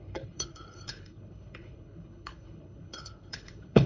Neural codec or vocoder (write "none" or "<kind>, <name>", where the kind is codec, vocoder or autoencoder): codec, HILCodec